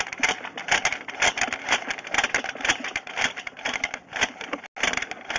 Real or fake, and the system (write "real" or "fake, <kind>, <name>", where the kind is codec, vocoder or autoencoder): real